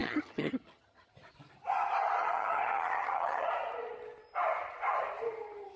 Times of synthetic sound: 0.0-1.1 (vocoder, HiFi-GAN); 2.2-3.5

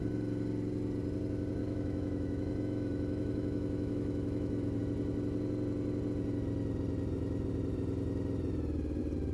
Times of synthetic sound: 1.6-4.8 (autoencoder, DAC-VAE)

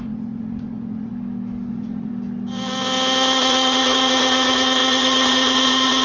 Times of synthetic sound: 0.0-1.1 (vocoder, Vocos); 1.7-2.1; 3.4-6.0

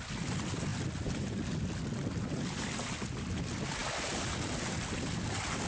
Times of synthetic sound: none

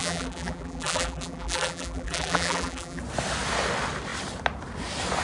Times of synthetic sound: 0.0-3.0 (vocoder, BigVGAN v2)

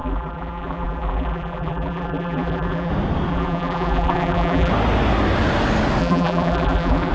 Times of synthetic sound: 0.0-2.9 (vocoder, BigVGAN v2); 3.3-4.7; 6.0-7.1

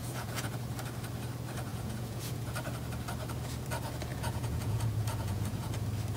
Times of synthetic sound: 0.0-0.5 (vocoder, Vocos); 1.7-2.6; 4.1-5.7